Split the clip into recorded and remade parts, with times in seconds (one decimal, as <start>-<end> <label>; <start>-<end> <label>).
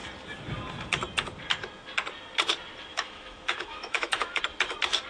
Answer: 0.0-2.9 recorded; 2.9-4.4 remade; 4.4-5.1 recorded